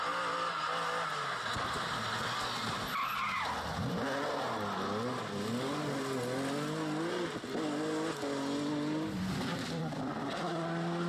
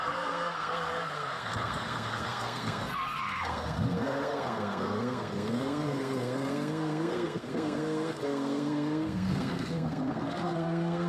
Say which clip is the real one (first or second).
first